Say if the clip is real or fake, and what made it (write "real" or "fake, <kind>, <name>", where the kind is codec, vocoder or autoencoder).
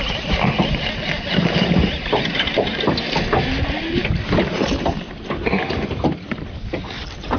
real